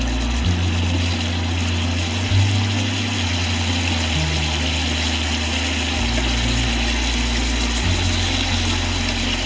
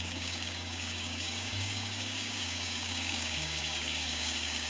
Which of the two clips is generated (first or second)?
second